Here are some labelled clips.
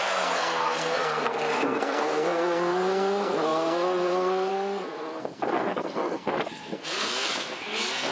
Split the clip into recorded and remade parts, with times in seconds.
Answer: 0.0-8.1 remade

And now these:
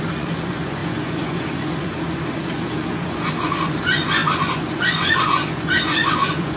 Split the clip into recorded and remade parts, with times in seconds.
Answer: 0.0-6.6 remade

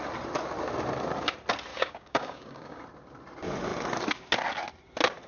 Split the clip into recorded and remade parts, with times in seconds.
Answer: 0.0-1.7 recorded; 1.7-2.8 remade; 2.8-5.3 recorded

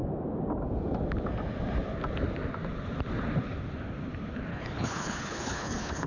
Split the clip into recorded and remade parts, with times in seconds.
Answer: 0.0-4.5 recorded; 4.5-6.1 remade